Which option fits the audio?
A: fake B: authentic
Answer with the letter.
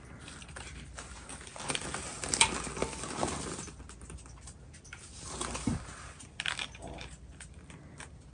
B